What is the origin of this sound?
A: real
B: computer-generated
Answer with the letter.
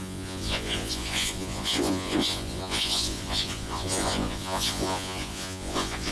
B